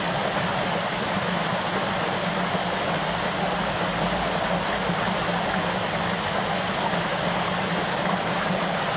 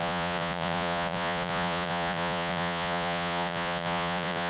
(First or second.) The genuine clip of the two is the first